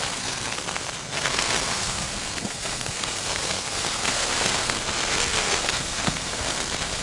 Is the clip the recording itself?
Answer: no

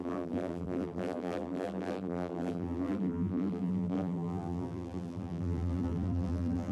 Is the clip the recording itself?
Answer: no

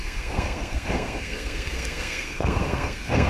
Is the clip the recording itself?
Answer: no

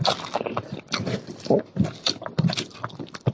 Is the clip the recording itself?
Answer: no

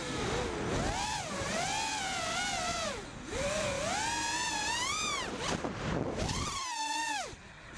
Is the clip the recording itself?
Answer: yes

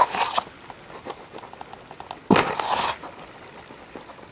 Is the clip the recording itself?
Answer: yes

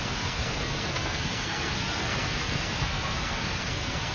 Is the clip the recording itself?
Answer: no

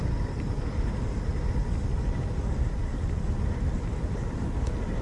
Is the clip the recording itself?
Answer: yes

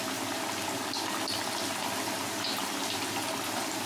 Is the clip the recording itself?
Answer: yes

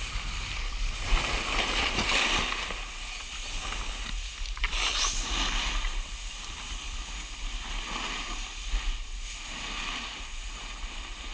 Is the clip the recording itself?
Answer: yes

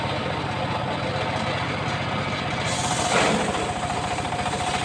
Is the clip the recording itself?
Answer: yes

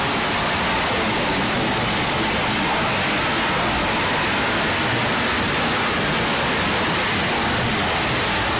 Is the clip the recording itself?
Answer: yes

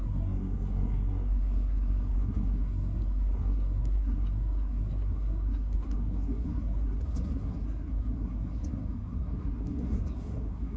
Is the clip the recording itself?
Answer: no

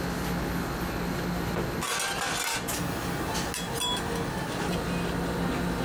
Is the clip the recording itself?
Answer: yes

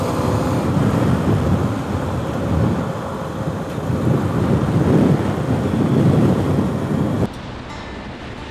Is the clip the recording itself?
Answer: yes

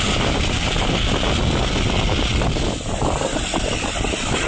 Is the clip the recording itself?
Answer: yes